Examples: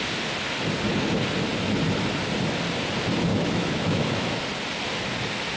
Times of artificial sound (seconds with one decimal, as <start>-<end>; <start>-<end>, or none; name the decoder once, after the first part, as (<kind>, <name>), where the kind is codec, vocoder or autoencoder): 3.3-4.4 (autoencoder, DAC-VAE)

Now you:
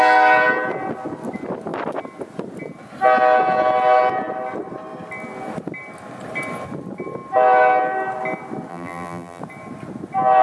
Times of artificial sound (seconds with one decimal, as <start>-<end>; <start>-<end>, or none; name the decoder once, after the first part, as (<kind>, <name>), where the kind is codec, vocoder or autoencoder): 8.7-9.4 (vocoder, BigVGAN v2)

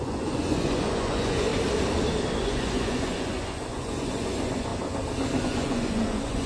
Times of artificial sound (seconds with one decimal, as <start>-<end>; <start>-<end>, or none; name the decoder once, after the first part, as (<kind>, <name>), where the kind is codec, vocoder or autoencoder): 0.0-1.5 (vocoder, Vocos); 2.4-4.7; 5.4-6.5

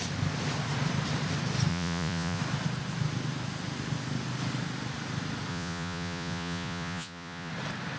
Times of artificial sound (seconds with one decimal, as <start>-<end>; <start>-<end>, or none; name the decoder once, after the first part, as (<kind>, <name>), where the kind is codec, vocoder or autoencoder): 1.7-2.4 (vocoder, Vocos); 5.5-7.5

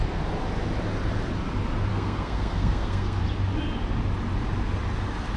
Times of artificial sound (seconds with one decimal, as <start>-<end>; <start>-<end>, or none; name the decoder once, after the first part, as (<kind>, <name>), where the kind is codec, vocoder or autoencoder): 1.9-3.2 (codec, SNAC)